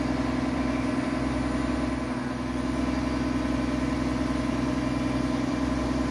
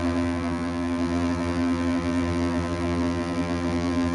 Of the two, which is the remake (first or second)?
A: second